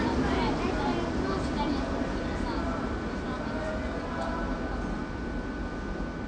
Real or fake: real